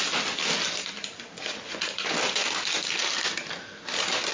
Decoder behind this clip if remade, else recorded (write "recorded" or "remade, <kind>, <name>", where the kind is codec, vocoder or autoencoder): recorded